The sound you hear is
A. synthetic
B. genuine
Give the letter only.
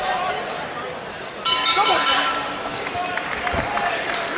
A